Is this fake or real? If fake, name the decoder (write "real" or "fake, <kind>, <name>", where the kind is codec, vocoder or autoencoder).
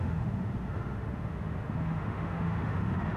fake, autoencoder, DAC-VAE